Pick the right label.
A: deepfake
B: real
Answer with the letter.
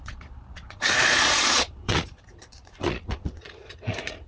A